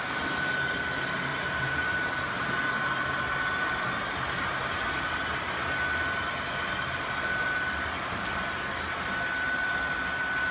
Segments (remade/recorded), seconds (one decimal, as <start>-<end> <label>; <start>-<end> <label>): 0.0-1.3 recorded; 1.3-2.1 remade; 2.1-10.5 recorded